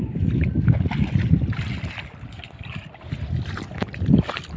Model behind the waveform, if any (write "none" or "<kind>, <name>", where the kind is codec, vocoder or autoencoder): none